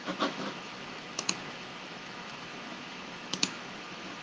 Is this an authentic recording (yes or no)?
no